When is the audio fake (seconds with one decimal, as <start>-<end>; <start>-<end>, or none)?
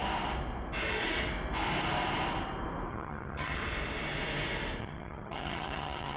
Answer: 2.9-3.6; 4.8-6.2